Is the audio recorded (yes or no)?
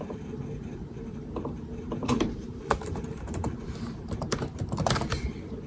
no